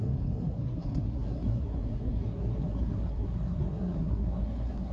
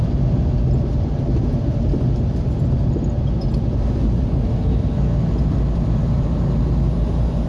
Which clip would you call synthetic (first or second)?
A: first